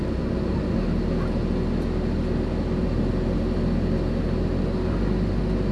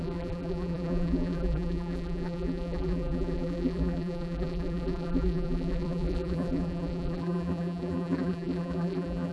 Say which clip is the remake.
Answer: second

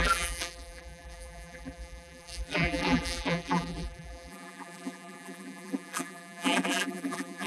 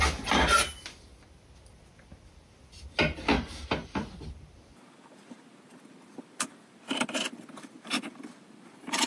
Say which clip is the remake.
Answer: first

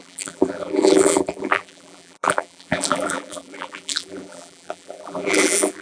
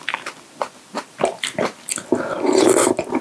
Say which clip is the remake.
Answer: first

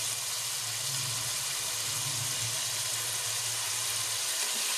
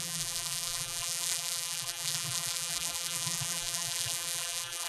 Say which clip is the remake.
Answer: second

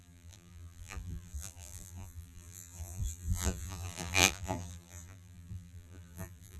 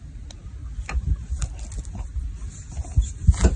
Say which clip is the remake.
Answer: first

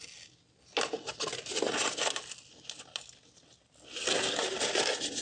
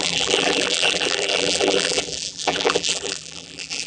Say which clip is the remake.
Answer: second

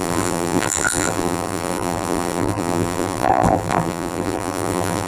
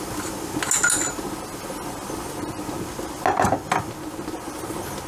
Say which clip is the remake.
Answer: first